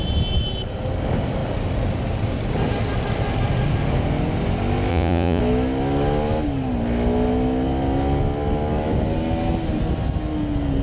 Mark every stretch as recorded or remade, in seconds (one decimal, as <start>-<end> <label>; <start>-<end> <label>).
0.0-4.9 recorded; 4.9-5.4 remade; 5.4-10.8 recorded